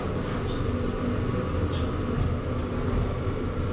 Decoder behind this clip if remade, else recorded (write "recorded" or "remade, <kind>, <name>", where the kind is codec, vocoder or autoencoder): recorded